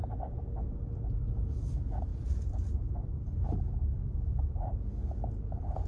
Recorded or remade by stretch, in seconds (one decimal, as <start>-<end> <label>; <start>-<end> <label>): 0.0-2.1 recorded; 2.1-3.3 remade; 3.3-5.9 recorded